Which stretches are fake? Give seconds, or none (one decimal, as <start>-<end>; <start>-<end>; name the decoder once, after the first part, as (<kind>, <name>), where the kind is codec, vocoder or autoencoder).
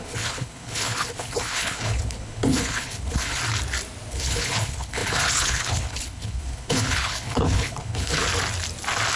0.0-3.4 (codec, HILCodec); 4.1-8.2